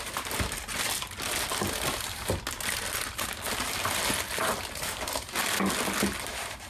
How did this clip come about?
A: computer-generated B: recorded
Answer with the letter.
B